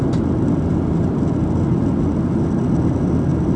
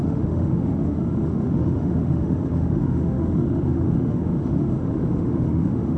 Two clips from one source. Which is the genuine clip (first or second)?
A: first